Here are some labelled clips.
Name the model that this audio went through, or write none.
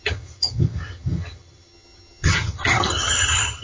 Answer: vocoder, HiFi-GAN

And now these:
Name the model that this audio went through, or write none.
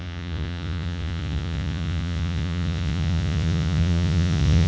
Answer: vocoder, Vocos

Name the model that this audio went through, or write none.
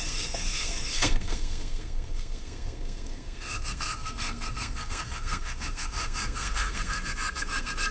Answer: codec, SNAC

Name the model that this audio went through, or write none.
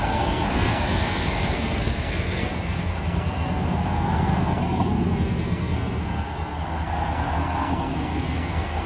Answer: codec, SNAC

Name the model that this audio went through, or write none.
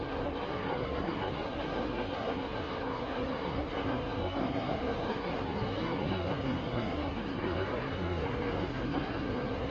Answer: codec, SNAC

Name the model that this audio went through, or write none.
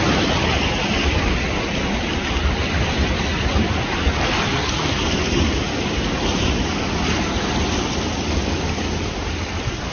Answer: none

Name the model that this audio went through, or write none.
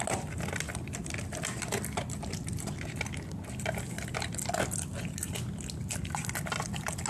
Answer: none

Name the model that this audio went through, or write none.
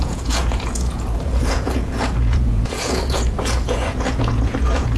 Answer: vocoder, Vocos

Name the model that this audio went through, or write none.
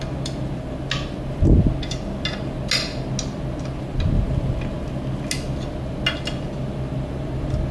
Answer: none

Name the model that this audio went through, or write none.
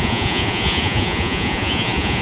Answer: vocoder, Vocos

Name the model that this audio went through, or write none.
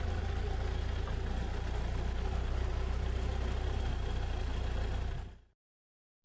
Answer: none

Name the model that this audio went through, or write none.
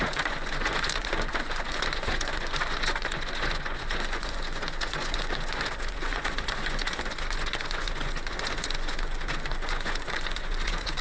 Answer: vocoder, Vocos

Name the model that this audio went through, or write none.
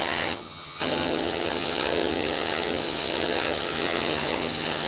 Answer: vocoder, HiFi-GAN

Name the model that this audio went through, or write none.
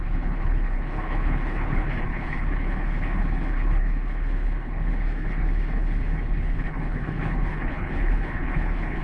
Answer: codec, HILCodec